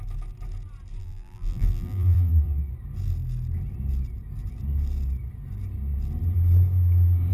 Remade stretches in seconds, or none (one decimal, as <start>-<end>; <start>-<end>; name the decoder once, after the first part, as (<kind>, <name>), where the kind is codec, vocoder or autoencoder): 1.0-2.7 (vocoder, BigVGAN v2)